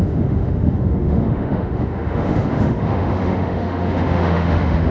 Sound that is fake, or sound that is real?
fake